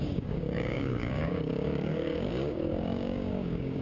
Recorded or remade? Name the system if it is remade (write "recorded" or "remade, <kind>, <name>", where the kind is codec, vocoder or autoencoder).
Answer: remade, codec, DAC